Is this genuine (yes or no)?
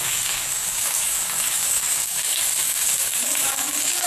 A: no